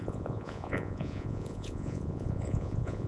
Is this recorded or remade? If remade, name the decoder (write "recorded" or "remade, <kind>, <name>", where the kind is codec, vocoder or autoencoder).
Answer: remade, vocoder, Vocos